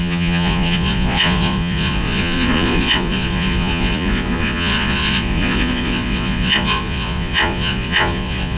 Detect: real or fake fake